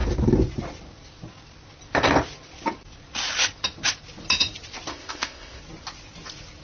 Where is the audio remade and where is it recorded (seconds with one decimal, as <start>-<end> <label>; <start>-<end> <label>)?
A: 0.0-4.9 recorded; 4.9-5.6 remade; 5.6-6.6 recorded